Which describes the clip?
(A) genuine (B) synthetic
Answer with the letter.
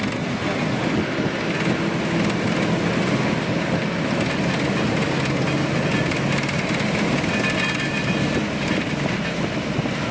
A